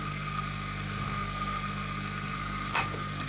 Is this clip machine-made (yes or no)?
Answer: yes